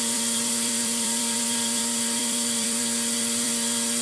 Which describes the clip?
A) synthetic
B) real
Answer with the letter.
A